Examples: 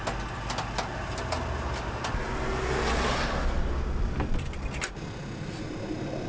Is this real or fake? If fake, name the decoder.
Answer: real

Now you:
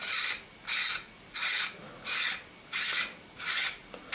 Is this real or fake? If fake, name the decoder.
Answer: real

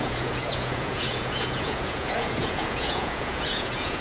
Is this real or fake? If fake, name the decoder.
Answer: fake, vocoder, Vocos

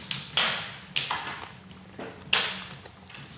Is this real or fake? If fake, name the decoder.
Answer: real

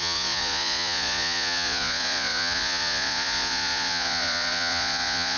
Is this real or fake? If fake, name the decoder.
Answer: fake, vocoder, Vocos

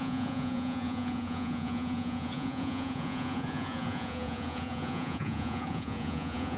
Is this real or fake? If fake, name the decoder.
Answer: fake, vocoder, Vocos